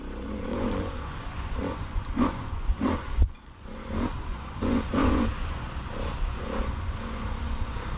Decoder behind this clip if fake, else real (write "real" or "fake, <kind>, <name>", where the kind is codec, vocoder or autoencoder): fake, vocoder, Vocos